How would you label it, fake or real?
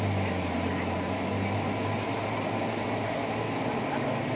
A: real